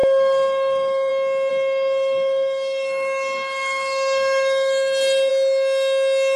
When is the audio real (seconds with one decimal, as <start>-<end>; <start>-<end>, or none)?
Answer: 1.1-1.5; 5.3-6.4